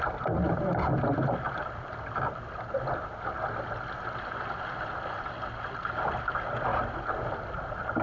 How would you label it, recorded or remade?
recorded